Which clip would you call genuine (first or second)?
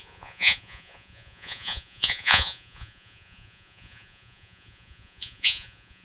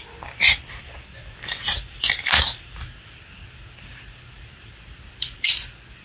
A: second